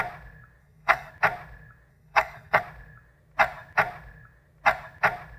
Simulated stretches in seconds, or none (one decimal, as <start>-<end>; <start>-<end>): 0.6-1.1; 1.9-2.6